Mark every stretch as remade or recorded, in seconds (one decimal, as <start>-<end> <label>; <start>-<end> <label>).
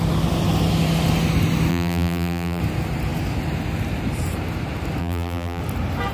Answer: 0.0-1.7 recorded; 1.7-2.6 remade; 2.6-5.0 recorded; 5.0-5.6 remade; 5.6-6.1 recorded